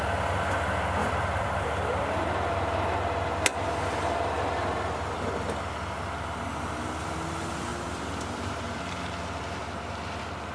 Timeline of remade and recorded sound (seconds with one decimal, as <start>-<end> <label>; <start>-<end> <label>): 0.0-1.0 recorded; 1.0-2.3 remade; 2.3-7.7 recorded; 7.7-8.6 remade; 8.6-10.5 recorded